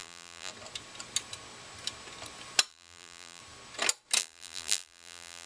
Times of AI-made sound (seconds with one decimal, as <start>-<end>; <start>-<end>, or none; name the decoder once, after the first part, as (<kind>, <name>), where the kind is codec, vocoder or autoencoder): 0.0-0.5 (vocoder, BigVGAN v2); 2.7-3.4; 4.2-5.5